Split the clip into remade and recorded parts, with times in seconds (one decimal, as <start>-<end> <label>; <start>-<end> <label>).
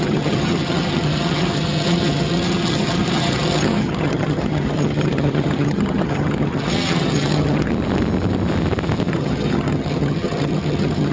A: 0.0-7.7 remade; 7.7-9.1 recorded; 9.1-11.1 remade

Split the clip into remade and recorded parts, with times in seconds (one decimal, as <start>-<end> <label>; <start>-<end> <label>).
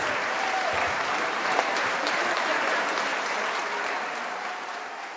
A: 0.0-3.6 remade; 3.6-4.4 recorded; 4.4-5.2 remade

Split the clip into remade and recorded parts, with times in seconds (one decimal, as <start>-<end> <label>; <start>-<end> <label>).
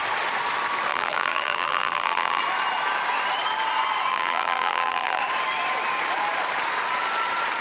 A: 0.0-0.9 recorded; 0.9-2.4 remade; 2.4-4.1 recorded; 4.1-5.2 remade; 5.2-7.6 recorded